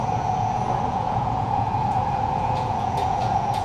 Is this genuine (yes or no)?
no